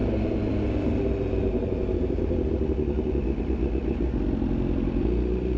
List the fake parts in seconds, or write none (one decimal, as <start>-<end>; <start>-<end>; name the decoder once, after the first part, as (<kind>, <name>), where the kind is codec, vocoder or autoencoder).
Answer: none